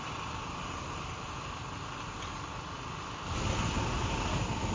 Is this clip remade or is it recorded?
recorded